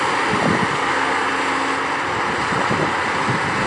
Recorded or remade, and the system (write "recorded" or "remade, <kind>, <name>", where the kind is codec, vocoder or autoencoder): recorded